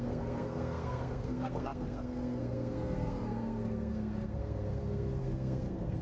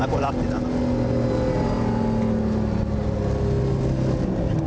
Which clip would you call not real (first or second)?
first